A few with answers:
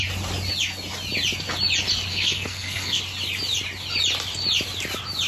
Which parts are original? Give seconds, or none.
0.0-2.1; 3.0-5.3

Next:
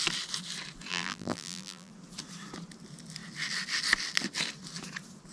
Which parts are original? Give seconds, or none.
0.0-0.9; 1.9-5.3

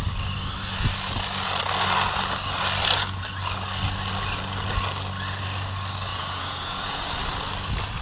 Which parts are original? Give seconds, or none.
0.0-6.1; 7.1-8.0

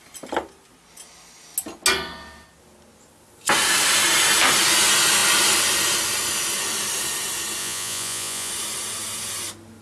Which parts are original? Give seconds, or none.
0.0-7.6; 8.5-9.8

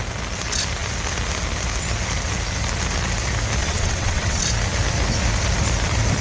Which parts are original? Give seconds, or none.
0.0-3.6; 4.4-6.2